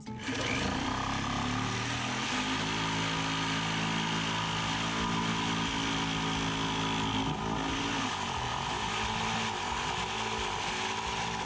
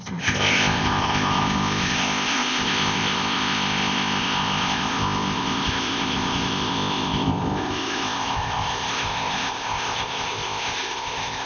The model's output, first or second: second